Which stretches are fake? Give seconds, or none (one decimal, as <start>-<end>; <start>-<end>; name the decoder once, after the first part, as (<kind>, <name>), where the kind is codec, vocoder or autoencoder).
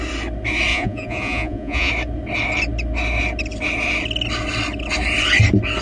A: 0.7-1.9 (vocoder, Vocos)